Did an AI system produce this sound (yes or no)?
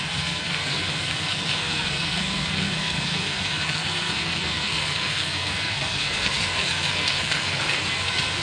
yes